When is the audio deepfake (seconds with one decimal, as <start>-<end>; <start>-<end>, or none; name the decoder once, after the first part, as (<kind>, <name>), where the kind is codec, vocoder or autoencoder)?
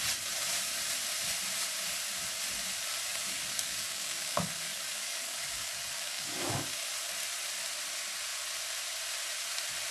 3.1-6.9 (codec, DAC)